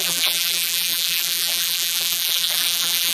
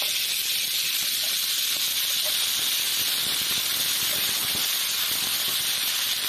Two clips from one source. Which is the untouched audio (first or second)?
second